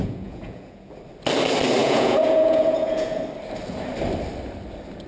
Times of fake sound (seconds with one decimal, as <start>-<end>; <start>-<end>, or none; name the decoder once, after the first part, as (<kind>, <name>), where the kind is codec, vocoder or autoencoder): 0.0-0.9 (vocoder, Vocos); 1.8-3.2